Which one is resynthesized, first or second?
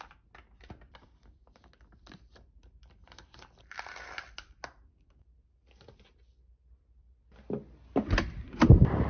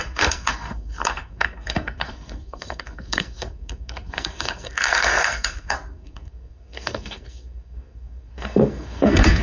second